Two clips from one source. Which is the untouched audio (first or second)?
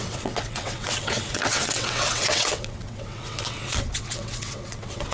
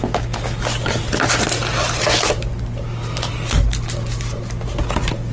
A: second